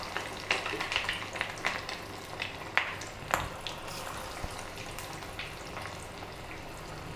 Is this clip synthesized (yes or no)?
no